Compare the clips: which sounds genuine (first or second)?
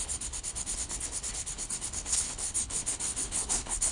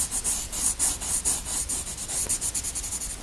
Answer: second